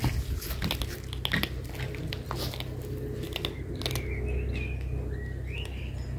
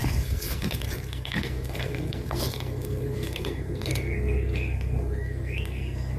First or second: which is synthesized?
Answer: second